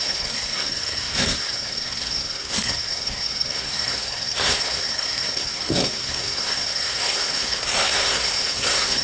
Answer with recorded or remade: remade